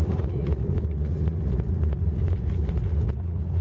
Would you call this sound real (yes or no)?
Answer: no